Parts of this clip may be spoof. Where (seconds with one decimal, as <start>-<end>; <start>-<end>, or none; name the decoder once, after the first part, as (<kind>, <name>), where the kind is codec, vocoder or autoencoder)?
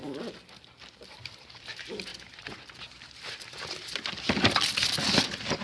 0.5-2.1 (vocoder, BigVGAN v2)